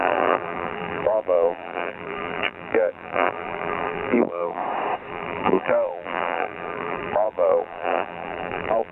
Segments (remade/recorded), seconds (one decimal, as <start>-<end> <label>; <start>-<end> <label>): 0.0-4.6 remade; 4.6-5.1 recorded; 5.1-8.9 remade